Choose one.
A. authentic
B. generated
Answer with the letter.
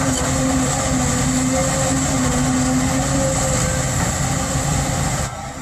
A